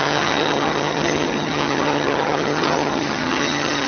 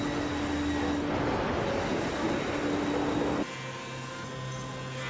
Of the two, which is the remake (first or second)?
first